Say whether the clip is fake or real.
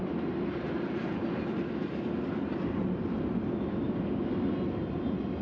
real